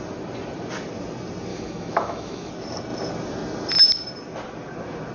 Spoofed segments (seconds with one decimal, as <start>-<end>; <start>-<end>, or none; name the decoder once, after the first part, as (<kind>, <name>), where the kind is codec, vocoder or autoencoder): 1.5-2.5 (autoencoder, DAC-VAE)